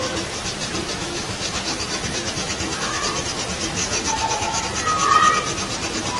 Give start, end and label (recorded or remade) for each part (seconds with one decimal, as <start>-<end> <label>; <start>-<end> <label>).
0.0-1.0 recorded; 1.0-3.0 remade; 3.0-3.8 recorded; 3.8-4.6 remade; 4.6-6.2 recorded